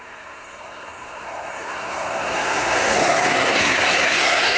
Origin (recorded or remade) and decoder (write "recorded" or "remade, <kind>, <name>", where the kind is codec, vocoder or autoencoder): remade, codec, SNAC